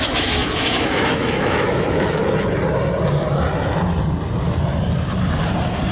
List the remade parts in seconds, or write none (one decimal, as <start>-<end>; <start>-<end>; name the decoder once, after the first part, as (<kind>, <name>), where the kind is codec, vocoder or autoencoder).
0.0-2.2 (autoencoder, DAC-VAE)